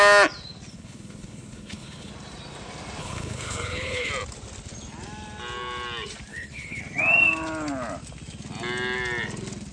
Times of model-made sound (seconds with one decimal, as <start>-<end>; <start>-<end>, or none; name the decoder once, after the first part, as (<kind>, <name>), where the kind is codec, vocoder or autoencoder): 0.7-2.1 (codec, HILCodec); 3.0-4.1; 6.3-6.8